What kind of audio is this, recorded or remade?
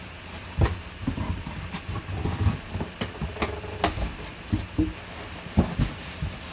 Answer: recorded